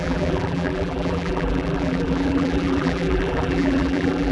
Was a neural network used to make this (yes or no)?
yes